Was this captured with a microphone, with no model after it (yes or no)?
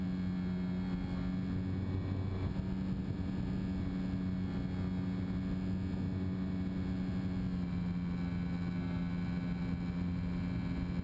yes